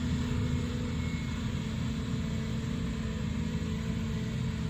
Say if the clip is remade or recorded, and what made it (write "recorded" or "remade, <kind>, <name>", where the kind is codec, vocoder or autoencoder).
recorded